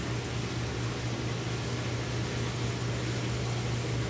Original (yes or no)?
yes